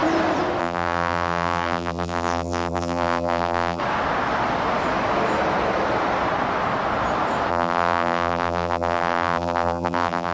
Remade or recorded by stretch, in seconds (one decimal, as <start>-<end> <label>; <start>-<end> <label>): 0.0-0.6 recorded; 0.6-3.8 remade; 3.8-7.5 recorded; 7.5-10.3 remade